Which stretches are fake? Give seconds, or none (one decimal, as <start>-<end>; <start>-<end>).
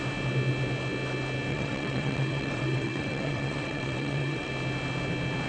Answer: 1.5-4.5